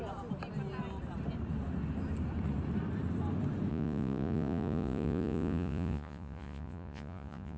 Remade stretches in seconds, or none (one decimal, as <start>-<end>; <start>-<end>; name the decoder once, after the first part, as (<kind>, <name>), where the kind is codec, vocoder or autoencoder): 3.7-7.6 (vocoder, Vocos)